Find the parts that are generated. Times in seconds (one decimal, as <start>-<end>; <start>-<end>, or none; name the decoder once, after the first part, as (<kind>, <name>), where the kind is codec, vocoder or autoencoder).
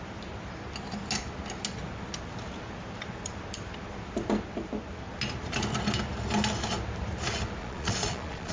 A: 7.6-8.5 (vocoder, Vocos)